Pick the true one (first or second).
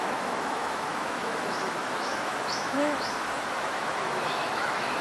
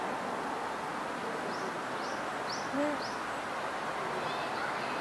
second